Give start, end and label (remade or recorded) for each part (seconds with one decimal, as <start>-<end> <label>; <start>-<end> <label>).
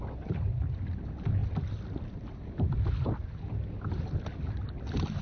0.0-5.2 recorded